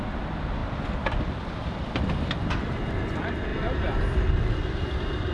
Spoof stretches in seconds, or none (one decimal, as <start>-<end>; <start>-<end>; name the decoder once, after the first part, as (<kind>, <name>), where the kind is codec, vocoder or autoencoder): none